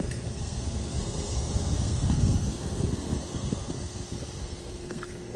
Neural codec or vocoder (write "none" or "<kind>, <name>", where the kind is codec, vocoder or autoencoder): codec, SNAC